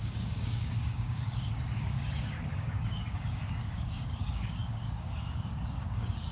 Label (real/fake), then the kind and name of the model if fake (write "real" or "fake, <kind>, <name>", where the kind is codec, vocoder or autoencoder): fake, codec, DAC